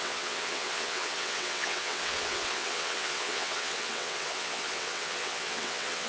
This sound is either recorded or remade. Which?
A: remade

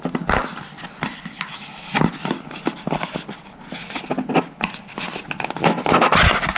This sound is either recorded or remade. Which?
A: recorded